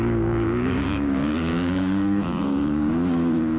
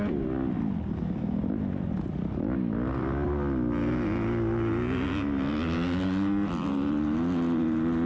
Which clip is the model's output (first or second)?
first